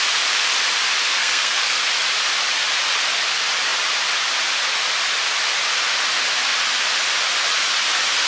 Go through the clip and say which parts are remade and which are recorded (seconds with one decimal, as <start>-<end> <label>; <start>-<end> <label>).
0.0-1.2 recorded; 1.2-1.8 remade; 1.8-8.3 recorded